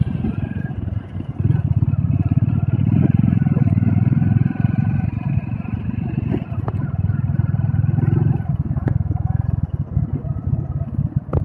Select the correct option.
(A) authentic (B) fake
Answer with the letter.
A